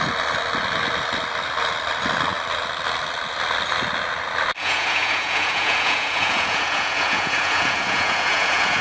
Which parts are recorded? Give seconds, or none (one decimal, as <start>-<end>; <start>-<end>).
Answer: 0.0-4.6